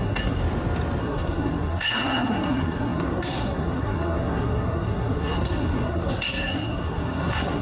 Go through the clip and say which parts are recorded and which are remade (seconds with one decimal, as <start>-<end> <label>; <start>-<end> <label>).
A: 0.0-0.4 remade; 0.4-1.0 recorded; 1.0-7.6 remade